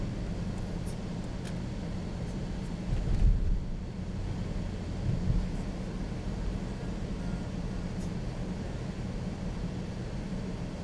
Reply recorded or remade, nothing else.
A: recorded